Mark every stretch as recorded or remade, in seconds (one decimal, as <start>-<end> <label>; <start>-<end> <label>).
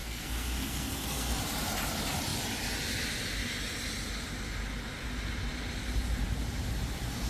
0.0-1.4 remade; 1.4-7.3 recorded